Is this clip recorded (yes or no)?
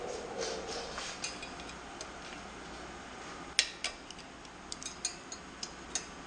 yes